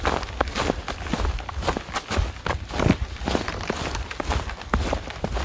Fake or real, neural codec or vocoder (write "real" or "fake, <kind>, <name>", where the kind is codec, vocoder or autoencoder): real